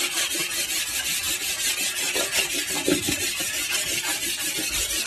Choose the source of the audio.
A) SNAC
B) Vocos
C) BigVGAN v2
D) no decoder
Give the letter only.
C